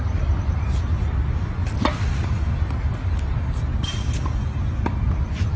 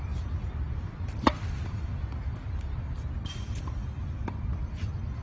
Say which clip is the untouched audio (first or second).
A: first